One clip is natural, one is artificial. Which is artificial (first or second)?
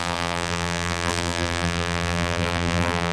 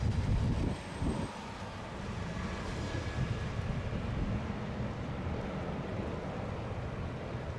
first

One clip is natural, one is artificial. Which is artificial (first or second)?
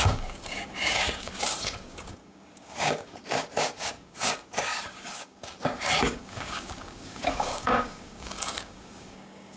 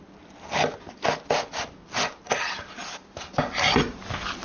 first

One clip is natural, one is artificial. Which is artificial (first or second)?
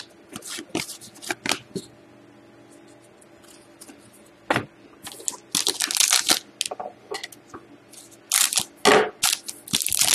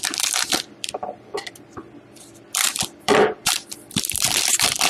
second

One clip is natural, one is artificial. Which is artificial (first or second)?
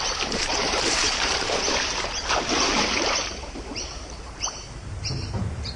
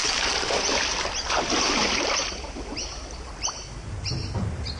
first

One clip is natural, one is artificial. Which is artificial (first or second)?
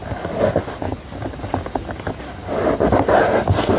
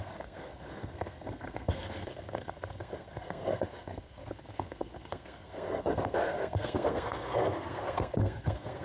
second